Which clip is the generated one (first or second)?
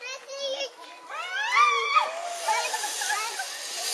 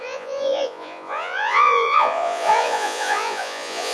second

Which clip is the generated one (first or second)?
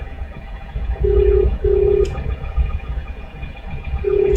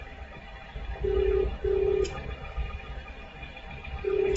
first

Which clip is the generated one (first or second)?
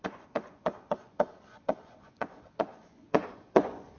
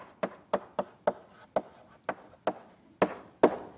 first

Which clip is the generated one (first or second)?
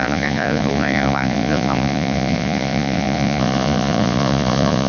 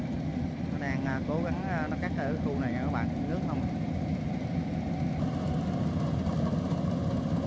first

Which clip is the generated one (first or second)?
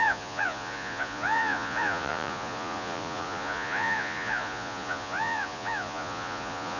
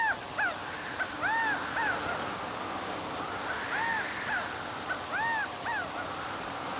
first